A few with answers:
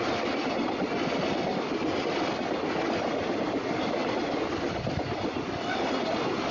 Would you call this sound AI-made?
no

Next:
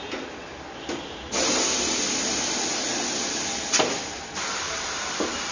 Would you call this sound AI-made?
no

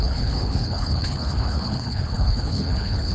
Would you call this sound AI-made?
yes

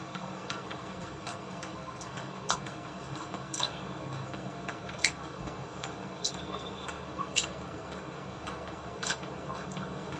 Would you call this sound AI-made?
yes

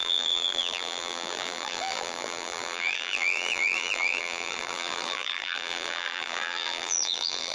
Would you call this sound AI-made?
yes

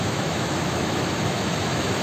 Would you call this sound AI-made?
yes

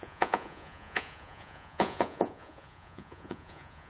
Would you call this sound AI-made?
yes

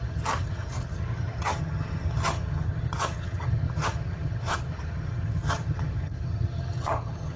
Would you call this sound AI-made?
yes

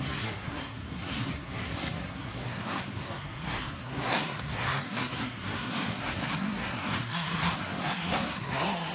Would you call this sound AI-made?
yes